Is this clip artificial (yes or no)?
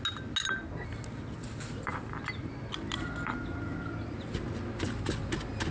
no